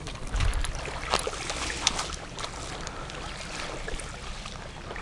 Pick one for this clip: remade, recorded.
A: recorded